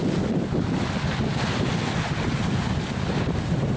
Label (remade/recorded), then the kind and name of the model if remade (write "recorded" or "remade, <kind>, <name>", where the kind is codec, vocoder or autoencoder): recorded